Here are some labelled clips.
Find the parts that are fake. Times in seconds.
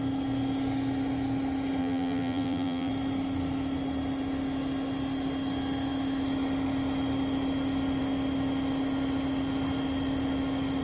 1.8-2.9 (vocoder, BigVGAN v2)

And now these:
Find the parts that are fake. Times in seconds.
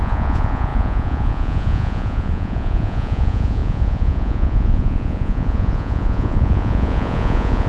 0.0-7.7 (vocoder, Vocos)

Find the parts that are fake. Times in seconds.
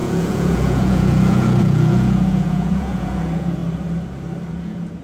0.0-3.6 (vocoder, Vocos); 4.5-5.0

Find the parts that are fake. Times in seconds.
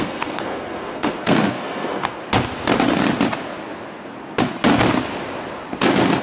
0.0-2.2 (codec, SNAC)